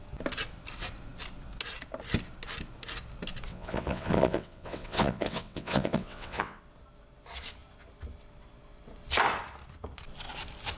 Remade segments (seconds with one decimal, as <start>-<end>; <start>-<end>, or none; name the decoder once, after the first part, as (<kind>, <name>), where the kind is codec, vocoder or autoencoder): 3.5-6.6 (vocoder, WaveNeXt)